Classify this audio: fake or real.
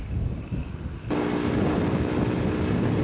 real